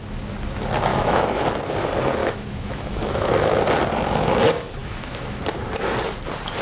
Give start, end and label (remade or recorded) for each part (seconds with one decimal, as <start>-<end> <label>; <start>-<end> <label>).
0.0-0.9 recorded; 0.9-1.4 remade; 1.4-2.2 recorded; 2.2-3.6 remade; 3.6-4.8 recorded; 4.8-5.4 remade; 5.4-6.6 recorded